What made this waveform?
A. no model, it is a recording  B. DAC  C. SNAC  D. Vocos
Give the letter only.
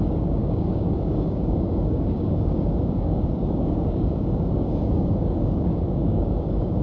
B